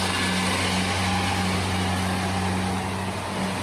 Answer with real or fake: real